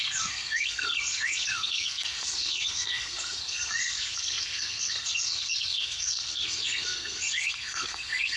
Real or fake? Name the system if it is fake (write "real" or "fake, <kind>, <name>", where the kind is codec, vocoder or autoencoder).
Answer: fake, codec, SNAC